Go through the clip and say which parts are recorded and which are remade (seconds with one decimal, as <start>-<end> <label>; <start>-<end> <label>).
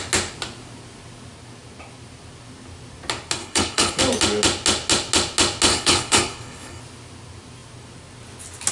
0.0-3.4 recorded; 3.4-4.0 remade; 4.0-5.7 recorded; 5.7-6.8 remade; 6.8-8.7 recorded